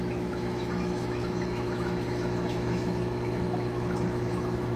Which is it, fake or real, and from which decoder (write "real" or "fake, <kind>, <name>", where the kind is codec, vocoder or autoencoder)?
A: fake, autoencoder, DAC-VAE